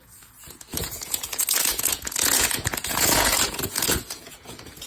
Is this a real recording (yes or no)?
no